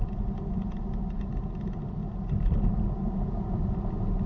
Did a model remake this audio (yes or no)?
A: no